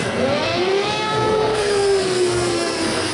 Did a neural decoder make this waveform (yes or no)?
yes